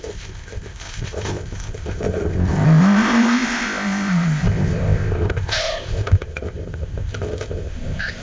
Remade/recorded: remade